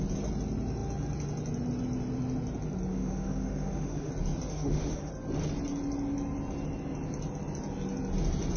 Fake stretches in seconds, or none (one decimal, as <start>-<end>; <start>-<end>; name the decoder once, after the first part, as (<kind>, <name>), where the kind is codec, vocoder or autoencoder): 2.9-4.1 (autoencoder, DAC-VAE); 4.5-5.1